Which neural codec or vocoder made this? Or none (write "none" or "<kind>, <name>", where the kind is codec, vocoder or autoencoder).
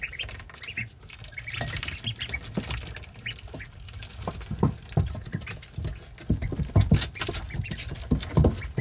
none